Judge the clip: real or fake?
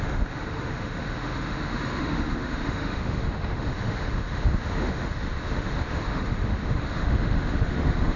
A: fake